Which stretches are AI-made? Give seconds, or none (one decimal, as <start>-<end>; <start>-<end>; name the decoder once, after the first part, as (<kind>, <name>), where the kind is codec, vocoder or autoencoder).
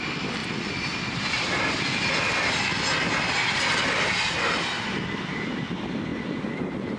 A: none